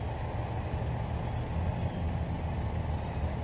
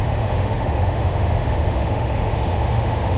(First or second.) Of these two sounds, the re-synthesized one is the second